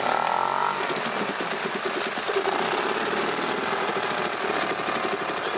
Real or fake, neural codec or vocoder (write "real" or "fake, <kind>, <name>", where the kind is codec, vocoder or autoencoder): real